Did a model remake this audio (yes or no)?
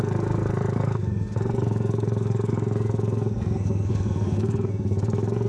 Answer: yes